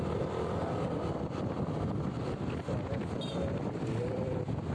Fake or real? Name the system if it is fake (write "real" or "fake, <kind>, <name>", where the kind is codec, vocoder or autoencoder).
real